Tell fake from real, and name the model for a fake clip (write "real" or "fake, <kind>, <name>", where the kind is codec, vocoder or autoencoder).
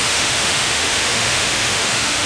fake, autoencoder, DAC-VAE